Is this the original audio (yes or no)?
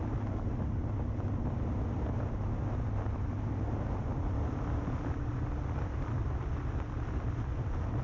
yes